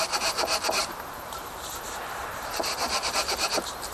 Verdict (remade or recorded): remade